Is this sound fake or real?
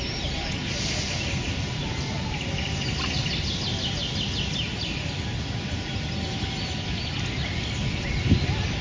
real